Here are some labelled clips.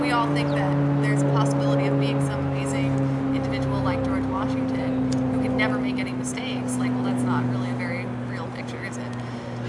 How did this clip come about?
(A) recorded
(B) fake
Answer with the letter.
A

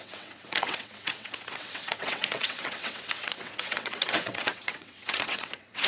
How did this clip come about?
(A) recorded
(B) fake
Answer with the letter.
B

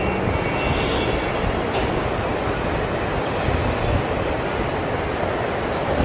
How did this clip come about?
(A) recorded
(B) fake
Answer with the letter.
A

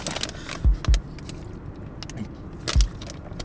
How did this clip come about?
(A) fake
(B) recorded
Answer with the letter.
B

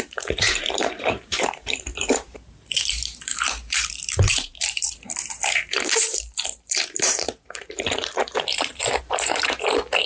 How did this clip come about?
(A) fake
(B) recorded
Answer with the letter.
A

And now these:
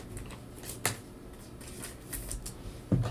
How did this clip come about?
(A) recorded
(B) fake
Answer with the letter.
A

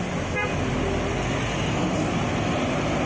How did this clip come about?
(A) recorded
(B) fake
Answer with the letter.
A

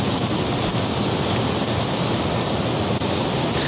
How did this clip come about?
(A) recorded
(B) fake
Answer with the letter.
A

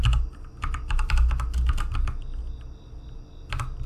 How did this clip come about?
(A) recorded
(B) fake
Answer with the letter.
A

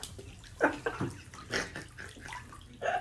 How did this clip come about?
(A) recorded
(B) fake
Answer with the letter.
A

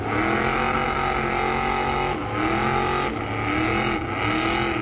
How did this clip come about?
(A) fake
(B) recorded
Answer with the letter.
B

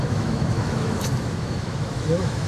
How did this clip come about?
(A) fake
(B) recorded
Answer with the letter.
A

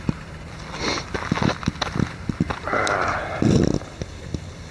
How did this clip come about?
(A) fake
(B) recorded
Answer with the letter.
B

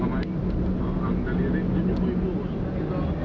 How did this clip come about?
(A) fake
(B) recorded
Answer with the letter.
B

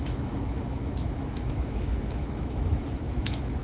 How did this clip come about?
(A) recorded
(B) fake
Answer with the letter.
B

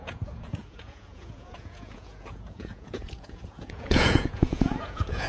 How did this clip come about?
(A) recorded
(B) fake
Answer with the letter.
B